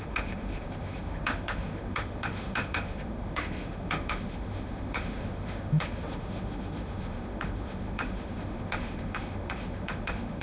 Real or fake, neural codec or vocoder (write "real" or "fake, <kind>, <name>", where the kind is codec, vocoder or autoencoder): fake, autoencoder, DAC-VAE